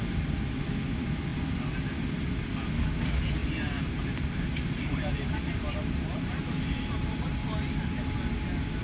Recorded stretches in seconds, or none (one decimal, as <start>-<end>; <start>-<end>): 0.0-3.4; 7.3-8.8